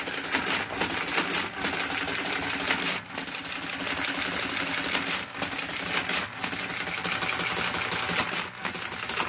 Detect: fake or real real